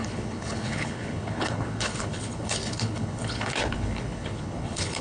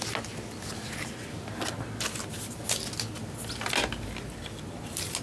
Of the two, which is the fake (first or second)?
first